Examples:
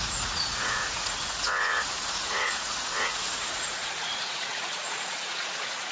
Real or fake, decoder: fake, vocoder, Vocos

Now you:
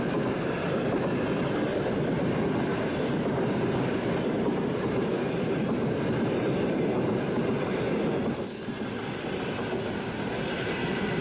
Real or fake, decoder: real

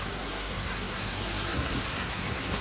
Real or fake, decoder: fake, codec, SNAC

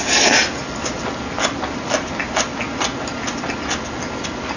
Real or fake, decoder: real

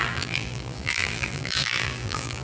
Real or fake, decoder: fake, vocoder, BigVGAN v2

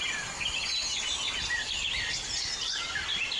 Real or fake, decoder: real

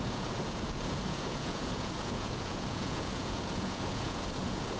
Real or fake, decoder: fake, vocoder, Vocos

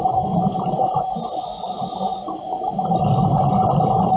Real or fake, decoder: real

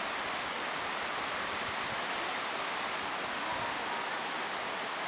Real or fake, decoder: real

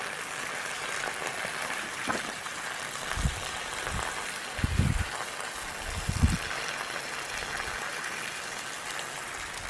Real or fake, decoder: real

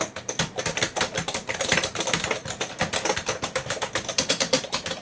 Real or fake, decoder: fake, vocoder, BigVGAN v2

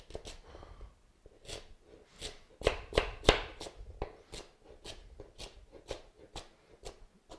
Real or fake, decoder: real